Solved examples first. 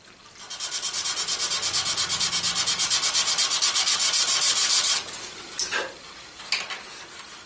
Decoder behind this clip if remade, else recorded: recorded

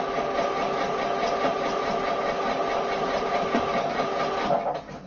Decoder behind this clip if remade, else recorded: recorded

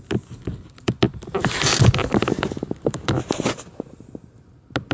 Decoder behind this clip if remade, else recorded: recorded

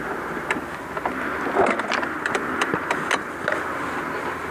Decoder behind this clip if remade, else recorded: recorded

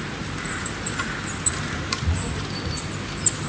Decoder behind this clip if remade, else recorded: remade, vocoder, BigVGAN v2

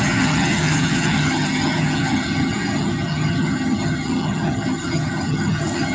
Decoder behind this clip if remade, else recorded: remade, vocoder, HiFi-GAN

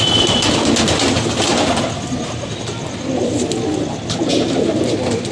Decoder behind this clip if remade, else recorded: recorded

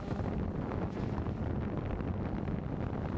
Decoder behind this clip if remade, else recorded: recorded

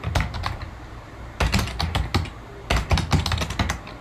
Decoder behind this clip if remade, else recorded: recorded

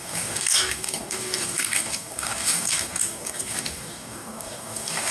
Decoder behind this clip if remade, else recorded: remade, codec, DAC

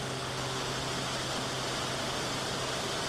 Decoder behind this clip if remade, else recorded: recorded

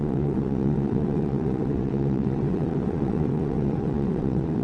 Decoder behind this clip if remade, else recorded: remade, vocoder, WaveNeXt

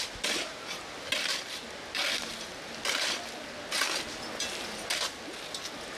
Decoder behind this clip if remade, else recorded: recorded